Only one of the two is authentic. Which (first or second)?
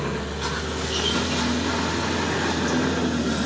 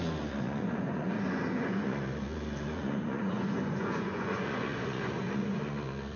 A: first